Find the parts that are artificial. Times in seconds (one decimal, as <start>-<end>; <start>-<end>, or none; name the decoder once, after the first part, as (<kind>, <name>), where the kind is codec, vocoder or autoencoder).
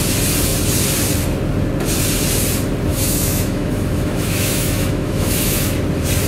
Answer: 2.9-5.6 (autoencoder, DAC-VAE)